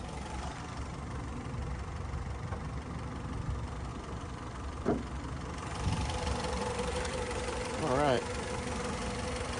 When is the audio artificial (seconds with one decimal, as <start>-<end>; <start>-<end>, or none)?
3.9-8.5